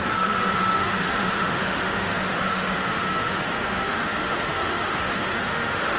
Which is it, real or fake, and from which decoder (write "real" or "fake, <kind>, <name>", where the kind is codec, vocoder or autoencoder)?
fake, autoencoder, DAC-VAE